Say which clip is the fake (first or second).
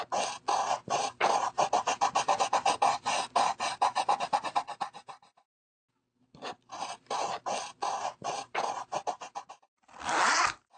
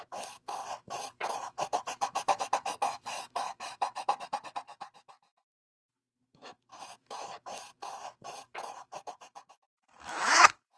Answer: second